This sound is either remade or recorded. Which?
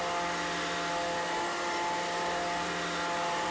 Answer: recorded